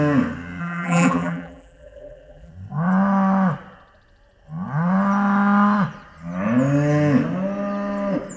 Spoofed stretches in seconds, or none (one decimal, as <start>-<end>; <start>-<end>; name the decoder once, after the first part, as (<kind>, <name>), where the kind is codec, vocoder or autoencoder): 0.6-2.5 (vocoder, BigVGAN v2)